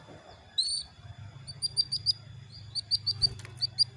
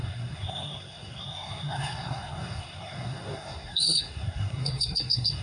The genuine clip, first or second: first